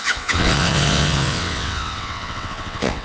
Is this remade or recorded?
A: remade